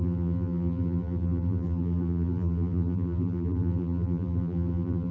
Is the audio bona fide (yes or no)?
no